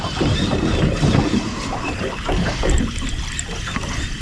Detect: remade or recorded recorded